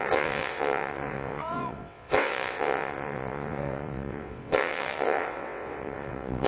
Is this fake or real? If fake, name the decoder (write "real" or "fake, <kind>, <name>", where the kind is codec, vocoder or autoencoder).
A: fake, vocoder, WaveNeXt